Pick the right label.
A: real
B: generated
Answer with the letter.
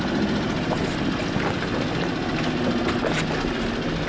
A